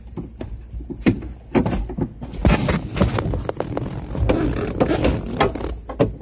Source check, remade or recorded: recorded